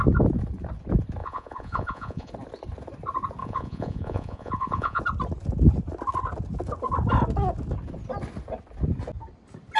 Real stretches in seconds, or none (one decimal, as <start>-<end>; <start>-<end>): 0.0-1.2; 2.3-3.4; 5.0-9.8